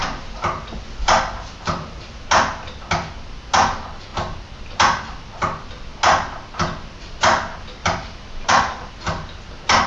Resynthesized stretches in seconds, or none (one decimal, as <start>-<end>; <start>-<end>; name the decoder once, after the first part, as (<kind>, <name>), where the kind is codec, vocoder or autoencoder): 7.8-8.9 (vocoder, BigVGAN v2)